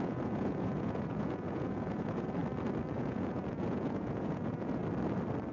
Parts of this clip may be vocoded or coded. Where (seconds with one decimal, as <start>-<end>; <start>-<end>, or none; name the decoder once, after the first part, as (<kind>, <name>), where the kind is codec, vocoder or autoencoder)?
0.0-2.4 (vocoder, Vocos); 2.9-4.8